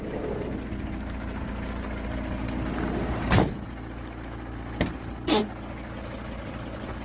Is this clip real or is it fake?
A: real